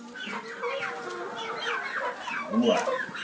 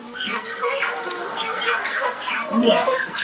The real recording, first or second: first